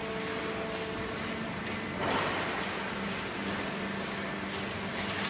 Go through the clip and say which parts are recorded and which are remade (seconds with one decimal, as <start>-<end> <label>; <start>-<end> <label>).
0.0-5.3 recorded